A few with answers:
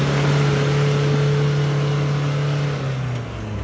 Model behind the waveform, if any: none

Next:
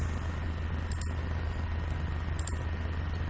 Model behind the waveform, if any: none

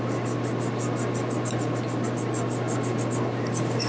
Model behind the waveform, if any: none